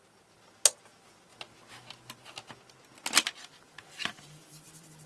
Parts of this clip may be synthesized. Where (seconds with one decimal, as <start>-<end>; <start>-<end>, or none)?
3.6-5.1

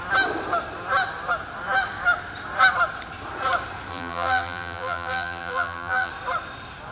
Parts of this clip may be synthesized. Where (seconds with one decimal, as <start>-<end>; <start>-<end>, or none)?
3.9-6.1

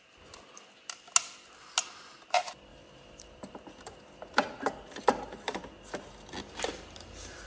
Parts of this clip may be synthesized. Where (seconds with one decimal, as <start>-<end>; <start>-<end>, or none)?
2.7-6.3

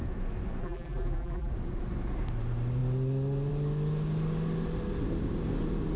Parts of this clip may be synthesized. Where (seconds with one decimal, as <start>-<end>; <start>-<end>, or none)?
0.6-1.5

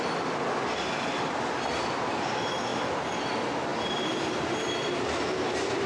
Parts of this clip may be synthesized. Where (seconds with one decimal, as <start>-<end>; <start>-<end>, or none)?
2.7-3.3; 3.7-5.0